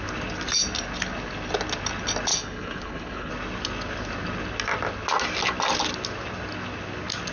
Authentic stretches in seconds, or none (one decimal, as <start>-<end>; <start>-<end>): 0.0-2.3; 3.3-7.3